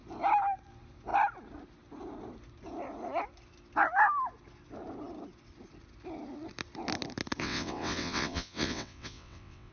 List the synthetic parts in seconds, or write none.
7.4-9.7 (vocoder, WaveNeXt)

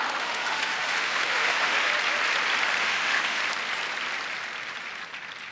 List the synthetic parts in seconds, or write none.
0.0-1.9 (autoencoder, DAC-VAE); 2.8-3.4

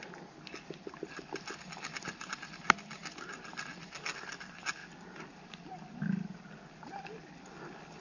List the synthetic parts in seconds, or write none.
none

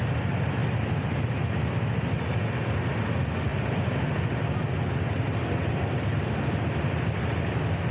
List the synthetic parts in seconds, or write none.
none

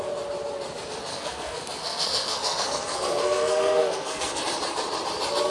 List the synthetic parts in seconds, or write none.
1.1-4.4 (codec, SNAC)

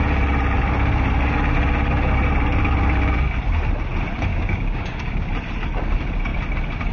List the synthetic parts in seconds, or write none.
4.3-5.3 (codec, DAC)

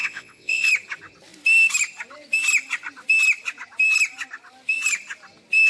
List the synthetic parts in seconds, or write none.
0.0-0.7 (vocoder, WaveNeXt)

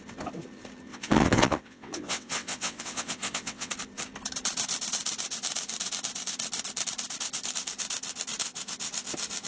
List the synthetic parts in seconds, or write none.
0.9-3.7 (vocoder, WaveNeXt)